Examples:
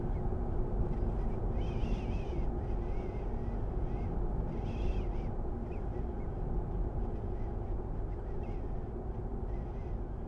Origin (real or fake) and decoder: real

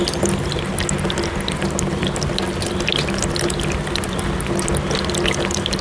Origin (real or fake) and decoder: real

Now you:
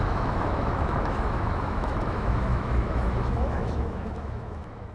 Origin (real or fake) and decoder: fake, autoencoder, DAC-VAE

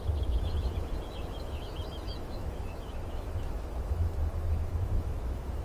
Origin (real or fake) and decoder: fake, autoencoder, DAC-VAE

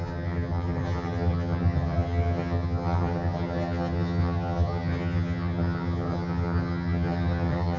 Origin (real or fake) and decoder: fake, vocoder, HiFi-GAN